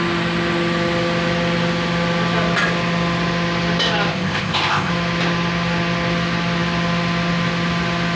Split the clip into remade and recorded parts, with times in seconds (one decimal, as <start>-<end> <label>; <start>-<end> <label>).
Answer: 0.0-4.1 recorded; 4.1-4.9 remade; 4.9-8.2 recorded